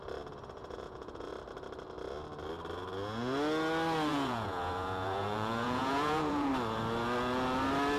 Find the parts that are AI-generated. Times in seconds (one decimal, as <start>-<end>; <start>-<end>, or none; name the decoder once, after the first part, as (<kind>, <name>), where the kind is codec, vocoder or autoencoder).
0.6-1.3 (vocoder, Vocos); 4.1-6.5